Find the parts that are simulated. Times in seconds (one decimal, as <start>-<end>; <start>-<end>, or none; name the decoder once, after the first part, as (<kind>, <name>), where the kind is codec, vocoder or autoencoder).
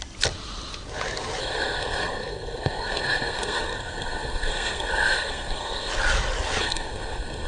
1.4-5.9 (codec, SNAC); 6.6-7.5